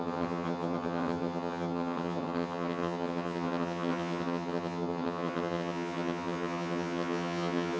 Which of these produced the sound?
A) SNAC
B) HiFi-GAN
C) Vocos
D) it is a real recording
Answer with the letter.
B